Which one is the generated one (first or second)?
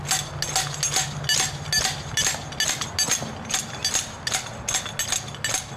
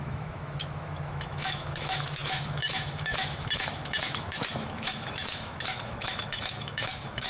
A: second